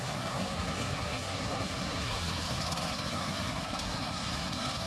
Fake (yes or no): yes